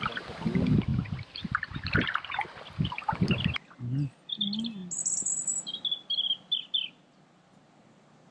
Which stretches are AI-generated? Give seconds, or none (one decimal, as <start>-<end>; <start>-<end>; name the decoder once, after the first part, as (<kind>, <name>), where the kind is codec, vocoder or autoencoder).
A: none